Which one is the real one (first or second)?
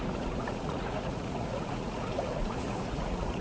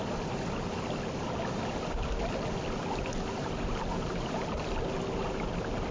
second